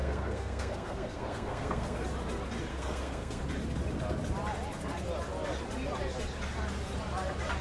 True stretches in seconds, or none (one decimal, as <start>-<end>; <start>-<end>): 2.0-2.7; 3.4-7.6